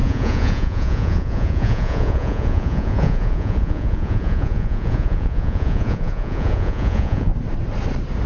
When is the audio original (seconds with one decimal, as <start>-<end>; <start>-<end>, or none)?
7.3-8.3